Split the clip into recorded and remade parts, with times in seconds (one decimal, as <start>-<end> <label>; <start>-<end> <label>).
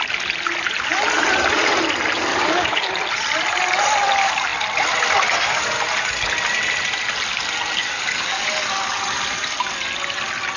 0.0-2.3 recorded; 2.3-2.9 remade; 2.9-7.8 recorded; 7.8-8.4 remade; 8.4-10.6 recorded